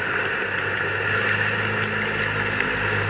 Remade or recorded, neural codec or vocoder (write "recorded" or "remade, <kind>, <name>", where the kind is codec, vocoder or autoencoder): recorded